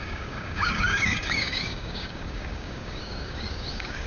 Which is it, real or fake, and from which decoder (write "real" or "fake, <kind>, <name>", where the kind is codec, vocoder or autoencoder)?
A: fake, codec, DAC